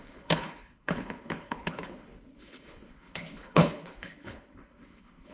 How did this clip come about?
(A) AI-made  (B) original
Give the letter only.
A